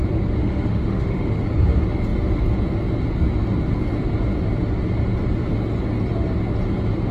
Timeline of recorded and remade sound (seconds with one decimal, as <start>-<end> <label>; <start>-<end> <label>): 0.0-0.4 recorded; 0.4-1.4 remade; 1.4-7.1 recorded